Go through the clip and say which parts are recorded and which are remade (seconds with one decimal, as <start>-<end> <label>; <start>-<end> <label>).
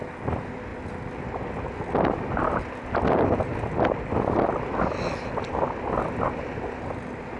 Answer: 0.0-7.4 recorded